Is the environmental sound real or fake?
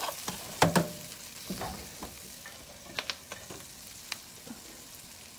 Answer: real